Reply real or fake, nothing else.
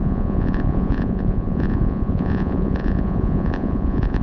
fake